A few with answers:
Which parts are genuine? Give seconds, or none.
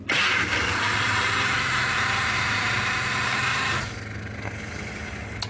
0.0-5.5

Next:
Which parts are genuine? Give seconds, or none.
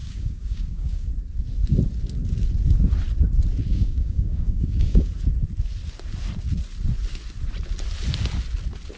1.1-3.7; 5.1-9.0